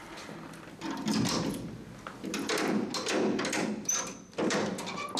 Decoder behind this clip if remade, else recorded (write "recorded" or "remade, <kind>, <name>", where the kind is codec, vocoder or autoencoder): recorded